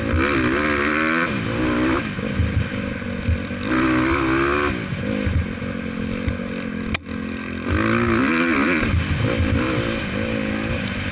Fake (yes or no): no